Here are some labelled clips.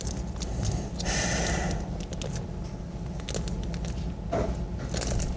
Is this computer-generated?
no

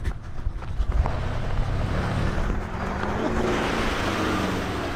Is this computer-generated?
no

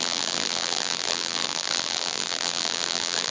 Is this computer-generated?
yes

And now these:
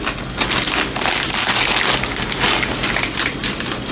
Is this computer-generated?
no